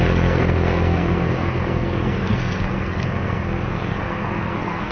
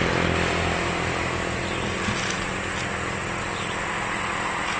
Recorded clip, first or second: second